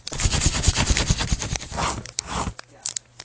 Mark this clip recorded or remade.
recorded